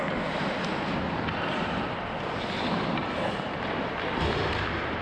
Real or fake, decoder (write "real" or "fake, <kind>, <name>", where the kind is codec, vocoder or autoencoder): real